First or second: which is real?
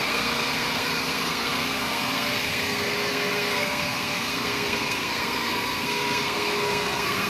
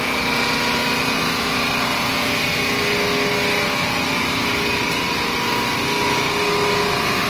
second